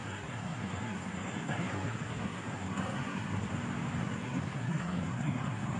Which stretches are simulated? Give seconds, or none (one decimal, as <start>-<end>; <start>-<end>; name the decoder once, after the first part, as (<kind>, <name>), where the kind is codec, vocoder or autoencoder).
0.0-3.5 (codec, SNAC); 4.0-5.8